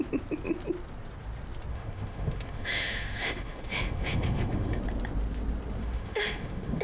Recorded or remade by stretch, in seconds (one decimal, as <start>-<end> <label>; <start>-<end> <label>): 0.0-1.7 recorded; 1.7-4.8 remade; 4.8-5.8 recorded; 5.8-6.8 remade